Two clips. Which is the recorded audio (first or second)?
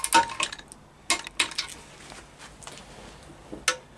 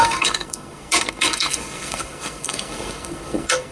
first